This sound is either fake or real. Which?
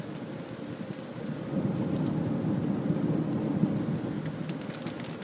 real